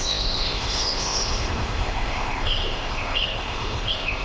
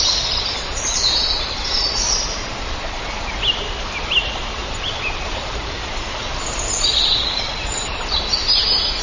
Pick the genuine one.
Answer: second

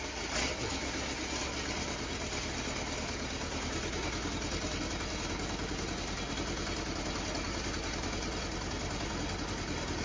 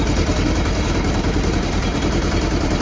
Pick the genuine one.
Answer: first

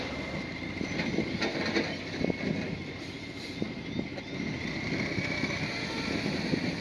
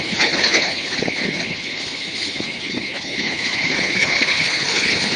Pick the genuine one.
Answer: first